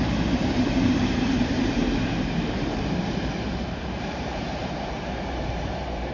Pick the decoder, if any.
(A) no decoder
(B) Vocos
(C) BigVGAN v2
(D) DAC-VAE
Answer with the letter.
C